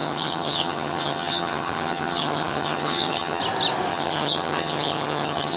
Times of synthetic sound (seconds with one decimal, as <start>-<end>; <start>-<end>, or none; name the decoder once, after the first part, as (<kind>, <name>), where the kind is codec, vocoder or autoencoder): 0.0-3.4 (vocoder, HiFi-GAN); 3.9-5.6